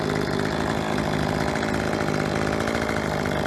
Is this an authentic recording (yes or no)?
yes